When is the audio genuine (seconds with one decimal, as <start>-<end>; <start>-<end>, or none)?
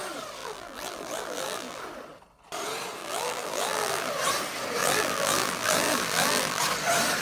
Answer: 0.0-0.4; 1.8-3.0; 4.1-4.8; 6.6-7.2